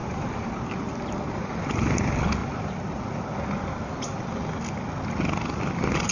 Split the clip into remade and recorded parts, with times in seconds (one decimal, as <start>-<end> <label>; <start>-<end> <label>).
0.0-0.5 remade; 0.5-2.4 recorded; 2.4-3.0 remade; 3.0-6.1 recorded